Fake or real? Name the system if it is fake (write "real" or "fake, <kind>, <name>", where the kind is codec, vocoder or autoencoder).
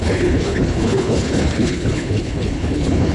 fake, codec, HILCodec